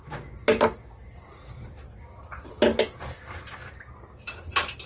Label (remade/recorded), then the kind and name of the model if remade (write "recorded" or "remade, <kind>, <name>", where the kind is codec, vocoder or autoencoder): recorded